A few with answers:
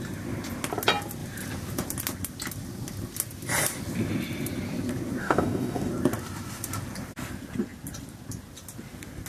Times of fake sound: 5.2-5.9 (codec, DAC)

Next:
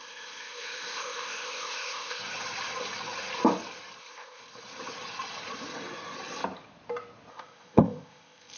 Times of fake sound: 0.0-2.2 (codec, ZipCodec); 4.0-4.4; 7.3-8.6

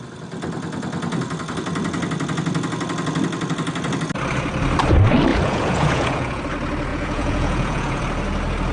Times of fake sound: 5.3-6.4 (vocoder, Vocos); 6.9-8.0

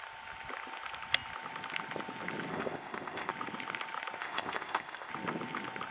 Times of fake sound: 2.5-3.3 (codec, ZipCodec); 4.2-5.1